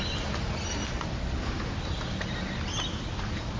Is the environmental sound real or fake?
real